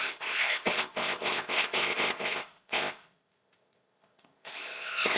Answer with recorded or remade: remade